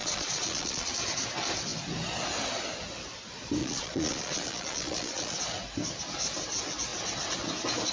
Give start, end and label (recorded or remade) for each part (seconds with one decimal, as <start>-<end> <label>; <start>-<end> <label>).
0.0-0.9 remade; 0.9-3.6 recorded; 3.6-5.4 remade; 5.4-7.9 recorded